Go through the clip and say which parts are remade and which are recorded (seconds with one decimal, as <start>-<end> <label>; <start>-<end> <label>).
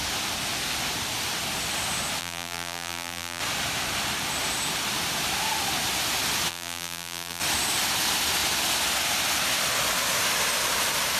0.0-2.2 recorded; 2.2-3.4 remade; 3.4-6.5 recorded; 6.5-7.4 remade; 7.4-11.2 recorded